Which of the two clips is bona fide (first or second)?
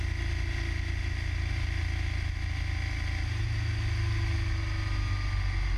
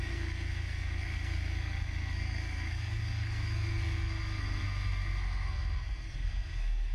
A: first